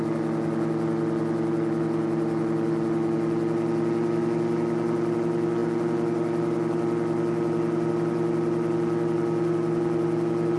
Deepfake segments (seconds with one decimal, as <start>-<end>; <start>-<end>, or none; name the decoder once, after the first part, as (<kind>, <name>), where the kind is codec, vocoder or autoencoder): none